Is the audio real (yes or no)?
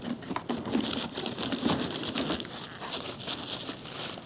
yes